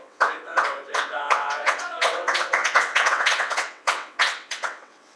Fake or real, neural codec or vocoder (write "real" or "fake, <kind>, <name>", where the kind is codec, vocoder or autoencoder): fake, vocoder, WaveNeXt